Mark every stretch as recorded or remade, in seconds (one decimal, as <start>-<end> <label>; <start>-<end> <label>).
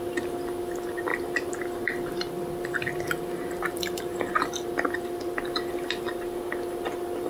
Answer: 0.0-1.1 recorded; 1.1-4.0 remade; 4.0-7.3 recorded